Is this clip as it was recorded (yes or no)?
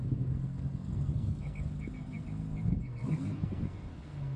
no